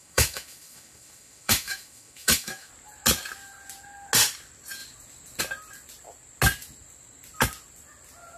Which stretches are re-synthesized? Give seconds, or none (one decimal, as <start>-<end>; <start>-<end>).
0.0-2.7